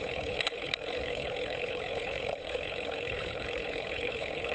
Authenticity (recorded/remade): remade